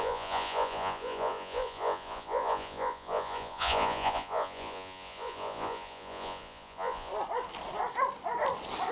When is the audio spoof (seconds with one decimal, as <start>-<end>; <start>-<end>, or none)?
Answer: 0.0-7.1